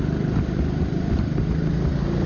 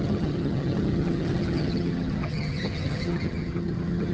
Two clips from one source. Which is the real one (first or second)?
first